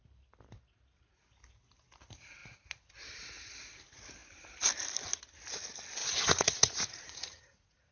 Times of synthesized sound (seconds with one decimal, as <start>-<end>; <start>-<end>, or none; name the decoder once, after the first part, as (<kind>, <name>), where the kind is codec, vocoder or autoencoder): 6.0-7.9 (vocoder, Vocos)